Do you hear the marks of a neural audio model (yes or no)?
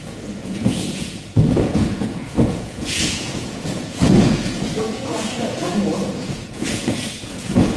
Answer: yes